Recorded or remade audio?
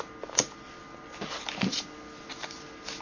recorded